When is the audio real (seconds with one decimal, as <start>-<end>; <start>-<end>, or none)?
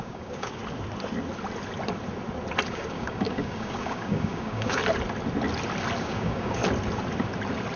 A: 0.6-2.7; 4.8-6.0; 6.6-7.8